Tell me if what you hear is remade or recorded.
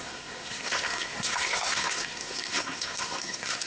remade